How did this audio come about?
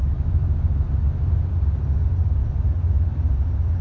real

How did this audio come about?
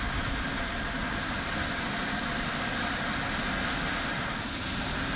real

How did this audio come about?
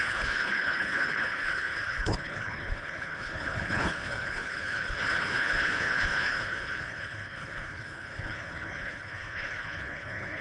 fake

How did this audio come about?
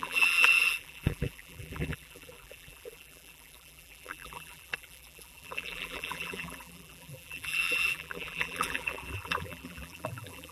fake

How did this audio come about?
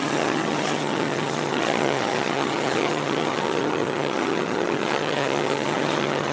fake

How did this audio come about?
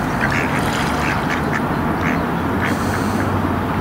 real